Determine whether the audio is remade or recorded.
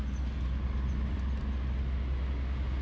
recorded